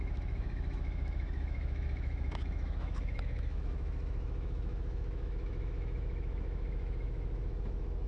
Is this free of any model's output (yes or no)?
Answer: no